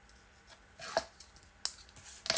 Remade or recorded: recorded